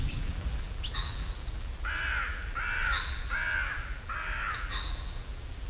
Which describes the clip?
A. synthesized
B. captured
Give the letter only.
A